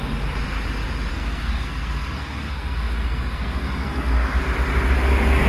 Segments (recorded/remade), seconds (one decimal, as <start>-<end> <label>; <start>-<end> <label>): 0.0-1.1 recorded; 1.1-4.4 remade; 4.4-5.5 recorded